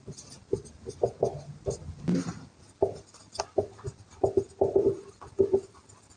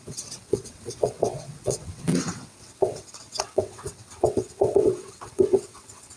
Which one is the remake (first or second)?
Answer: second